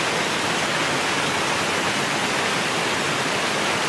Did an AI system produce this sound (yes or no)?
no